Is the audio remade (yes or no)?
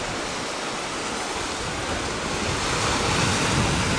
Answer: no